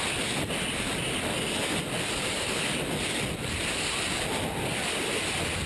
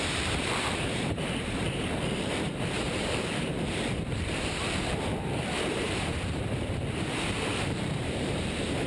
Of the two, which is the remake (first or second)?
second